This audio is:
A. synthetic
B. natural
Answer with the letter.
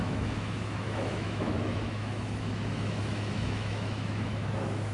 A